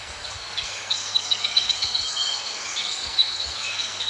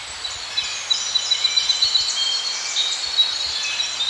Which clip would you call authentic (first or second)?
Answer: second